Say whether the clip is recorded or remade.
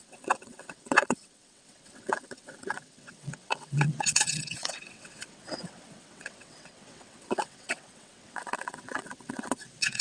remade